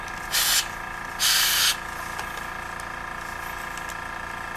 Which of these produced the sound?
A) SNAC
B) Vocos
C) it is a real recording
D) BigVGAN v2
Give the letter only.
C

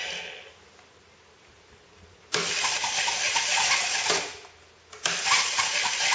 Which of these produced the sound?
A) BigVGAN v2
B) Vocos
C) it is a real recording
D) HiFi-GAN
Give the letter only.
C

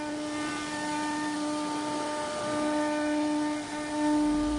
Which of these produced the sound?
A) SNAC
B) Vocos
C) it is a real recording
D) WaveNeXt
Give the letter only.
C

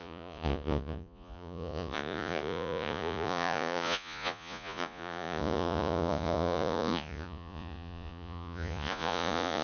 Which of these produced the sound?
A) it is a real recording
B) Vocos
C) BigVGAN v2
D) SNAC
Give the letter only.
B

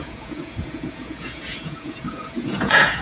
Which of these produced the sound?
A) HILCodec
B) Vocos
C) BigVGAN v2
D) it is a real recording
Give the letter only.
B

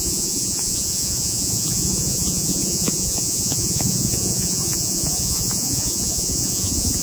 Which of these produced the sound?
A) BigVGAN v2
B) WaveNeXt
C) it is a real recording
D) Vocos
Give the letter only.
D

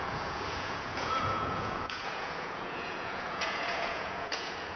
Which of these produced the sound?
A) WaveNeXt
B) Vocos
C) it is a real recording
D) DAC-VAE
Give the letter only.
B